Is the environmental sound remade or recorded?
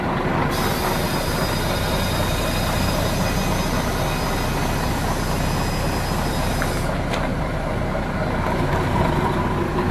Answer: recorded